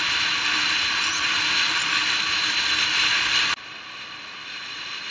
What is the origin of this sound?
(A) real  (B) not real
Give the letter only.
A